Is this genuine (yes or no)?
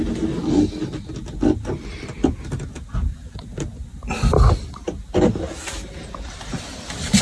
yes